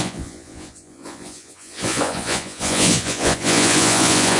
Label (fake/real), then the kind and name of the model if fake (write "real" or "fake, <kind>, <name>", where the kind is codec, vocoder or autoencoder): fake, vocoder, Vocos